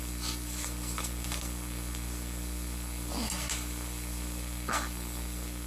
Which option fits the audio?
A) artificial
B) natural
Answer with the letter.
A